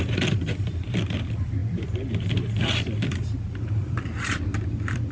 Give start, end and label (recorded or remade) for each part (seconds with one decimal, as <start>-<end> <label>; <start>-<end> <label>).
0.0-5.1 remade